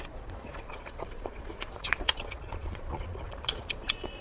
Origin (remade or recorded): remade